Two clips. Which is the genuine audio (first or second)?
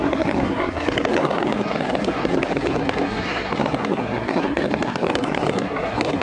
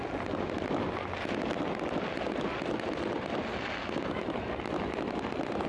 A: second